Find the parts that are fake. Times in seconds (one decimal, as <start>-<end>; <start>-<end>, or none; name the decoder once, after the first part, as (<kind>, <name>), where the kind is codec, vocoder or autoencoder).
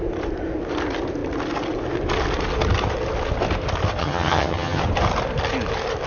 4.0-4.8 (vocoder, HiFi-GAN)